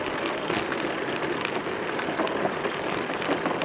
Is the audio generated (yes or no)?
no